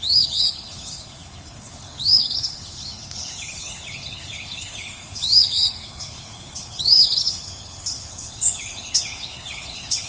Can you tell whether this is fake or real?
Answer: fake